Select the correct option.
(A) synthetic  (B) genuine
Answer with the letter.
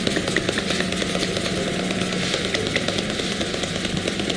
B